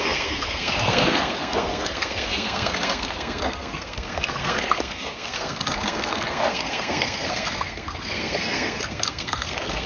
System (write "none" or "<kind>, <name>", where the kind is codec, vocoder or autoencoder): codec, SNAC